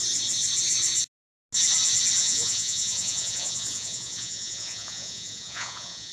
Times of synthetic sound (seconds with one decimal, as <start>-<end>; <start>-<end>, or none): 2.2-6.1